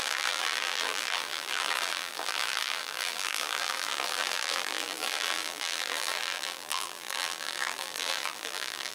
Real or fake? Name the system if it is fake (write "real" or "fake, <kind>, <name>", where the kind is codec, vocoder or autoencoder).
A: fake, vocoder, BigVGAN v2